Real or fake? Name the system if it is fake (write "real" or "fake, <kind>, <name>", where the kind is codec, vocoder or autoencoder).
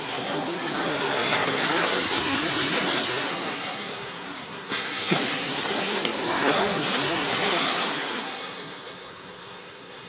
fake, codec, SNAC